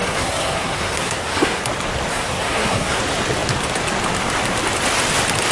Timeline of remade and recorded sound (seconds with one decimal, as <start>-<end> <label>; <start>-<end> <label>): 0.0-1.6 remade; 1.6-2.1 recorded; 2.1-3.0 remade; 3.0-5.5 recorded